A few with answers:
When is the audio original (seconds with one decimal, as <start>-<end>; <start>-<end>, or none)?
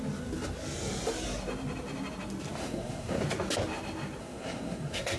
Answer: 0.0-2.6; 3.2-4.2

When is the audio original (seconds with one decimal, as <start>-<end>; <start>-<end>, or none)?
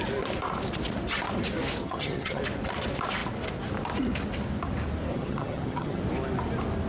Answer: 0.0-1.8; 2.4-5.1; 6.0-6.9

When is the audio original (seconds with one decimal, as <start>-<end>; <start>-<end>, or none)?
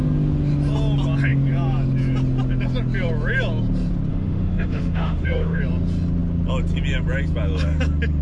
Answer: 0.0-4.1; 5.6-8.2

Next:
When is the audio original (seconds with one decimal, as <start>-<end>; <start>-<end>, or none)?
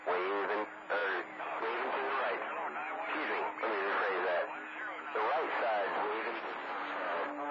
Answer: 0.0-7.5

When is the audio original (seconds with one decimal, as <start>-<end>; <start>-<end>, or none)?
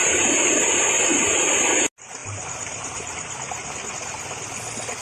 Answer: 0.6-2.2; 3.9-5.0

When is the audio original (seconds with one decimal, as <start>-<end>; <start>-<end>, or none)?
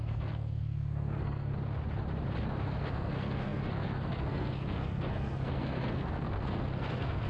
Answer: 1.5-2.6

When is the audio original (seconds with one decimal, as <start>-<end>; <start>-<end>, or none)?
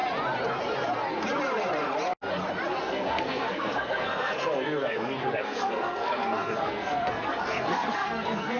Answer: 0.0-2.8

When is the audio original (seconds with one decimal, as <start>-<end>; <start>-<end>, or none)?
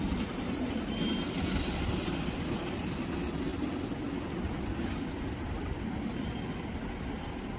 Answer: 0.0-7.6